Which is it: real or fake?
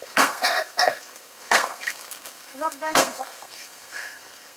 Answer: fake